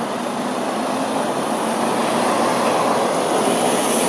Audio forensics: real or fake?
real